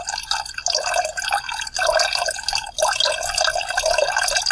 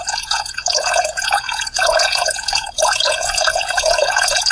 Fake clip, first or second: second